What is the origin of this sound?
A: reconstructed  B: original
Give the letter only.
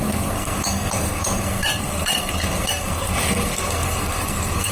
A